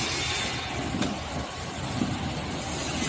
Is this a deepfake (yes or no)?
no